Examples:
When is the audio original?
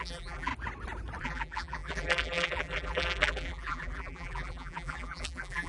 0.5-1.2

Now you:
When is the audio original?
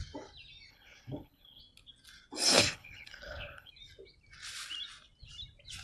0.0-0.7; 1.6-2.5; 3.7-5.8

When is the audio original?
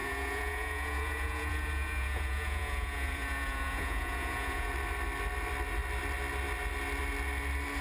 4.7-7.8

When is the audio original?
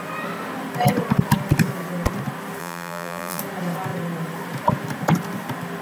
0.0-2.6; 3.4-5.8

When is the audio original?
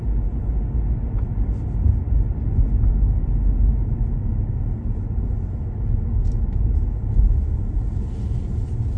0.0-9.0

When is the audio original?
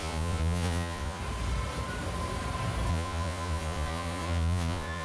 1.2-2.9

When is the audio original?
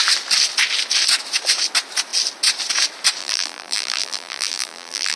0.0-3.2